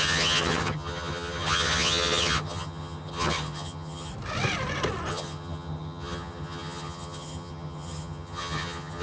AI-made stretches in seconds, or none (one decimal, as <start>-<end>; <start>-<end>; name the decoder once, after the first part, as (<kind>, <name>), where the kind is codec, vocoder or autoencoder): 0.0-4.1 (vocoder, HiFi-GAN); 5.1-9.0

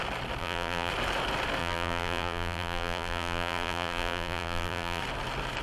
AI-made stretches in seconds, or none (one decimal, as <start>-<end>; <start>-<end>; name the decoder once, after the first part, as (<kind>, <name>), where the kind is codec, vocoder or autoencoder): 0.4-0.9 (vocoder, BigVGAN v2); 1.6-5.0

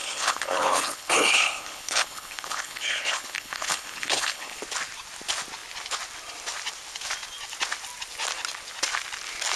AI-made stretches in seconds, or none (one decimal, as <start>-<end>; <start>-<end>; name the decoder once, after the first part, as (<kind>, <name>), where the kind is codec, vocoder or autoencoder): 0.0-4.6 (codec, HILCodec)

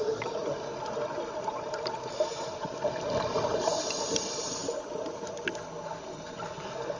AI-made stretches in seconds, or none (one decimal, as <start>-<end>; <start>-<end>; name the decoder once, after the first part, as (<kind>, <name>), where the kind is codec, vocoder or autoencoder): 0.0-0.4 (vocoder, BigVGAN v2); 1.5-4.6; 6.6-7.0

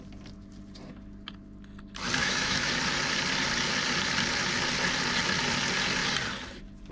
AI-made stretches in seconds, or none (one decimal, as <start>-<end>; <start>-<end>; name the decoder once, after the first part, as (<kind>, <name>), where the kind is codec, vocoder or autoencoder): 2.2-2.7 (autoencoder, DAC-VAE)

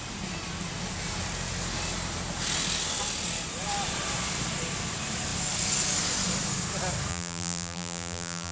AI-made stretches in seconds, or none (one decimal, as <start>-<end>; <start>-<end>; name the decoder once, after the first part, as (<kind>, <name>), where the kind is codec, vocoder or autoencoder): 7.1-8.5 (vocoder, BigVGAN v2)

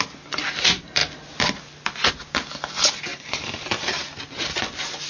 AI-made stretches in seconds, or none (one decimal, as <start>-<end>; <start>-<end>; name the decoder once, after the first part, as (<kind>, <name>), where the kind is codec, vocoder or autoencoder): 3.1-3.9 (vocoder, BigVGAN v2)